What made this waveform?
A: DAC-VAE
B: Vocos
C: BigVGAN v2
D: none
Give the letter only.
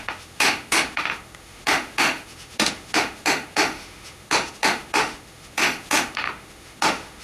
A